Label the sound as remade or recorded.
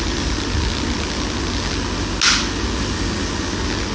recorded